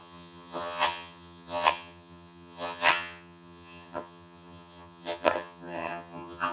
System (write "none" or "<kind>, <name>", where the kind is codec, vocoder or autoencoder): vocoder, HiFi-GAN